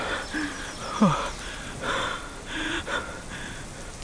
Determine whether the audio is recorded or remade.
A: recorded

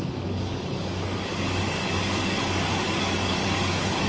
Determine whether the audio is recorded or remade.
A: remade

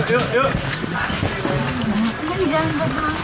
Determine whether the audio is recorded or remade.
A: recorded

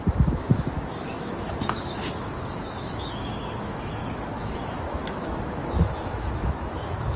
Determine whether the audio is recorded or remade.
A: remade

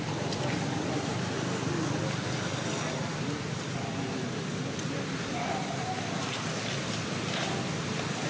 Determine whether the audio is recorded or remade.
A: recorded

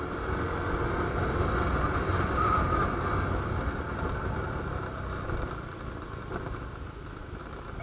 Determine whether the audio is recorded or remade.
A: recorded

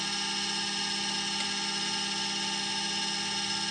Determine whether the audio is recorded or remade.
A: recorded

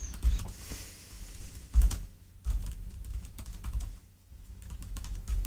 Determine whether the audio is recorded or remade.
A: remade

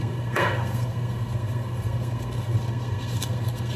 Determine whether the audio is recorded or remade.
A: remade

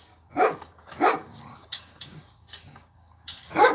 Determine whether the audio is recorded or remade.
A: remade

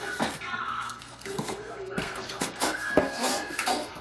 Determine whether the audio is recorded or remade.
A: remade